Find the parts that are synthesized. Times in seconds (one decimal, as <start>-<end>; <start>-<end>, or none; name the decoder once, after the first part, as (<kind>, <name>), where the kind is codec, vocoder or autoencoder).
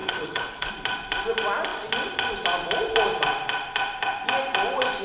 0.0-0.7 (codec, HILCodec)